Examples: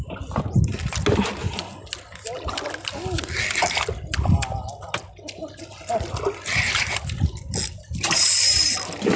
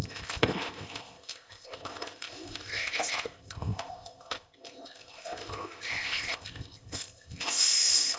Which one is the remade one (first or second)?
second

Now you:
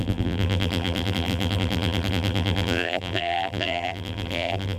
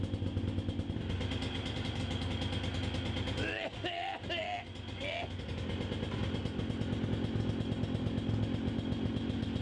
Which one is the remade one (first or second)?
first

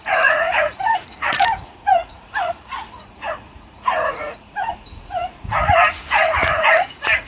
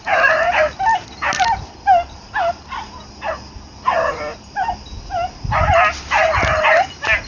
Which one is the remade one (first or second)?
first